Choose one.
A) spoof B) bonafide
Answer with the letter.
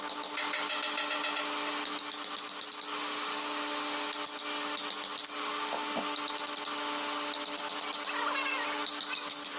B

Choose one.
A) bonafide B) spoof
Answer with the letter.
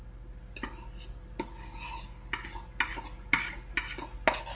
A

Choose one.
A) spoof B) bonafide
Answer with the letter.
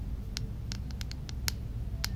B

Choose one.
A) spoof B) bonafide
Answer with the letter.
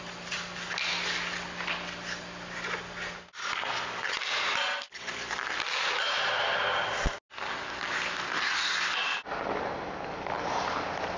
B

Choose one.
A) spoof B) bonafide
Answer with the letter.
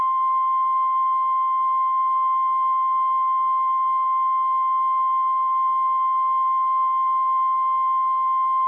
A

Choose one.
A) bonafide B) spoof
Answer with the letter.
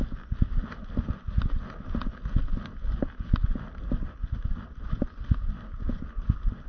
A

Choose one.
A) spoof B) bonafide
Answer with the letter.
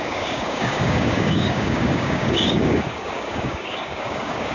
A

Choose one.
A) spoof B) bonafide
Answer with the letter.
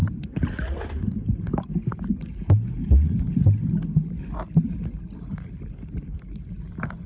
B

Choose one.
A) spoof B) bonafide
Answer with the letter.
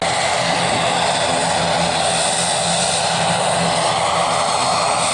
B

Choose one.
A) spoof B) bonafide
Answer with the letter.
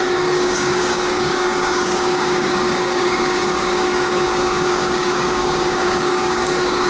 A